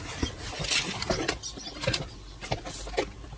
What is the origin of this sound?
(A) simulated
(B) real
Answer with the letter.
B